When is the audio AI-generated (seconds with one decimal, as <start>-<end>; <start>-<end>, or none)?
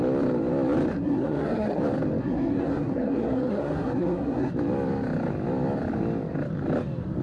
0.9-1.8; 2.2-4.5